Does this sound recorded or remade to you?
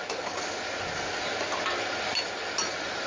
recorded